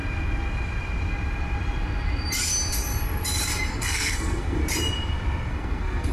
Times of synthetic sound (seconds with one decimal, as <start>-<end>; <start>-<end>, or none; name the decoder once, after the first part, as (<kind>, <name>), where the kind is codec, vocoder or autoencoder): 3.7-4.6 (codec, SNAC); 5.5-6.1